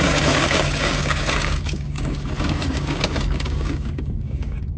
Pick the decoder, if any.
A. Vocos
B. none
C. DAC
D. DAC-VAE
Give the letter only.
C